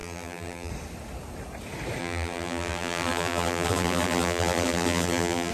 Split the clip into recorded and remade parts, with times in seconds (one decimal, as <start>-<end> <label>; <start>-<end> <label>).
0.0-0.7 remade; 0.7-2.0 recorded; 2.0-5.5 remade